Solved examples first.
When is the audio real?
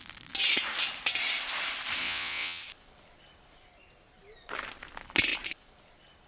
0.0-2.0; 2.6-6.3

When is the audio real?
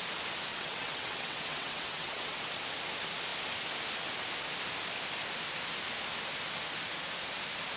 0.0-0.5; 2.4-7.8